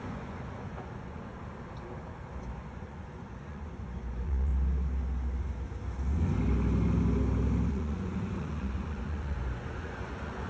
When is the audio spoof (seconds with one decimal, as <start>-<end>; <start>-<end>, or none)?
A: 0.0-1.3; 2.4-4.5; 7.7-10.5